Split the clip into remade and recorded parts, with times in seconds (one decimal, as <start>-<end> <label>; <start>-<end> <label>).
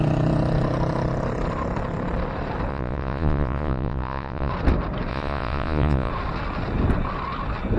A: 0.0-2.7 recorded; 2.7-4.5 remade; 4.5-5.1 recorded; 5.1-6.1 remade; 6.1-7.8 recorded